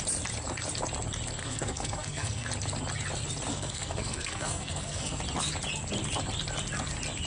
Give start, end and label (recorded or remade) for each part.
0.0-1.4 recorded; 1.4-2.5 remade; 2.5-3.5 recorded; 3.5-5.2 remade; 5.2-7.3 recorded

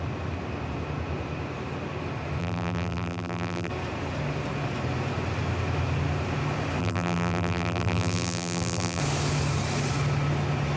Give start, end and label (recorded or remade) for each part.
0.0-2.4 recorded; 2.4-3.7 remade; 3.7-6.8 recorded; 6.8-9.0 remade; 9.0-10.8 recorded

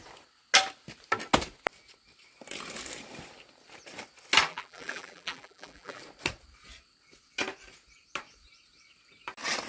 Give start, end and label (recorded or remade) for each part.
0.0-4.5 recorded; 4.5-6.0 remade; 6.0-9.7 recorded

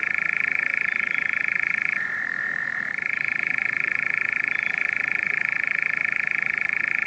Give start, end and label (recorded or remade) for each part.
0.0-7.1 remade